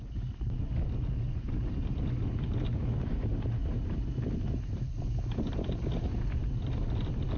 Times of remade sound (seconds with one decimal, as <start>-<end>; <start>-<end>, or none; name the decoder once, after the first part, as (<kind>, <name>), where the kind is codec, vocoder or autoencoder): none